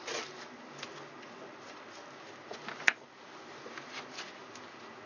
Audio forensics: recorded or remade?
recorded